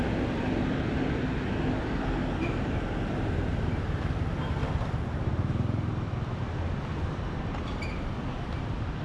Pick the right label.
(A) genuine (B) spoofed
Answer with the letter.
A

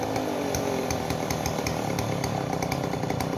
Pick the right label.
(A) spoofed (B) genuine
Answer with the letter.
B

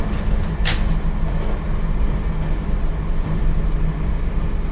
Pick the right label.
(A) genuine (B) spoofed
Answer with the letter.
A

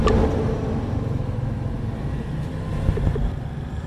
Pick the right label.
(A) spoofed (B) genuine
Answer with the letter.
B